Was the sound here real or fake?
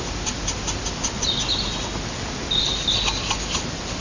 real